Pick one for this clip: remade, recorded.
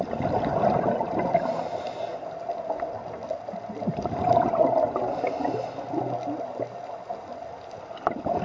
recorded